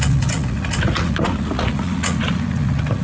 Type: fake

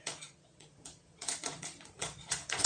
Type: fake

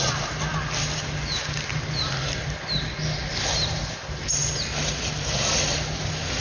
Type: real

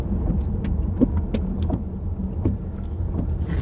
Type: real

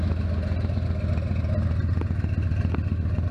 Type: real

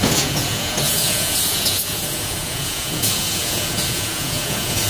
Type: fake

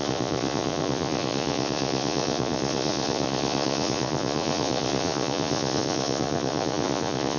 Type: fake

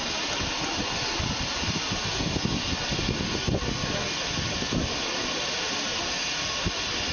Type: real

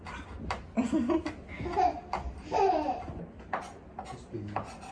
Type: real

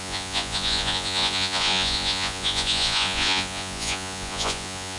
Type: fake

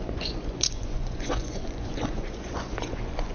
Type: fake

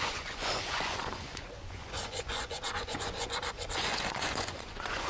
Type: fake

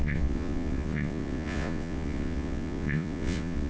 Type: fake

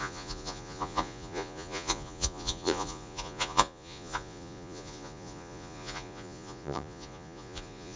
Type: fake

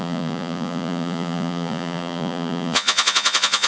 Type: fake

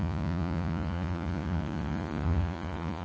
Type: fake